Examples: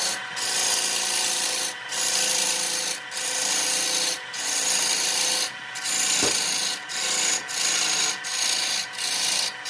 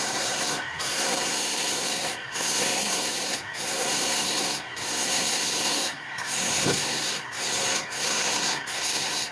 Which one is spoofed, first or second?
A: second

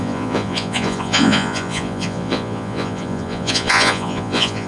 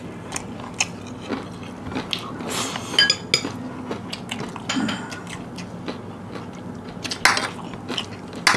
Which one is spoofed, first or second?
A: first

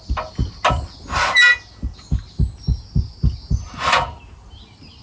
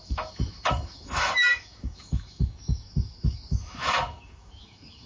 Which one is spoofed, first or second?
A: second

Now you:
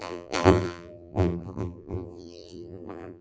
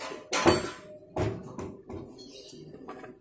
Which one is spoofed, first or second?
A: first